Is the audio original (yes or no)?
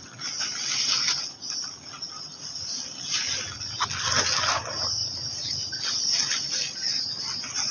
yes